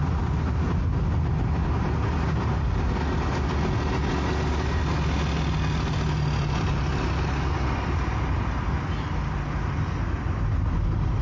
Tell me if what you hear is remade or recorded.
recorded